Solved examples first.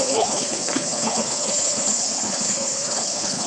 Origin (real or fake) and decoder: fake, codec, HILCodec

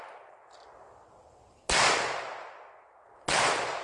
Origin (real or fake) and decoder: real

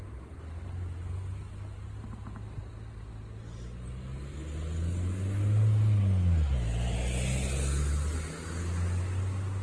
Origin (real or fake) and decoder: real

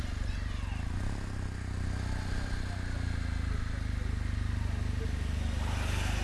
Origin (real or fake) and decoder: real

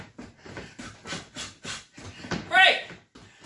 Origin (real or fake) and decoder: real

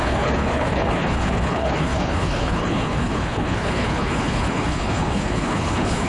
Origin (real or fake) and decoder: fake, codec, HILCodec